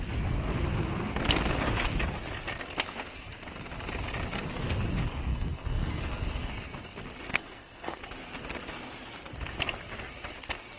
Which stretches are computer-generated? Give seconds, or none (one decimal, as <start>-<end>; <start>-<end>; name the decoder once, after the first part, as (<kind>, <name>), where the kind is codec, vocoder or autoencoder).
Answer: 5.3-6.0 (codec, SNAC); 7.3-8.0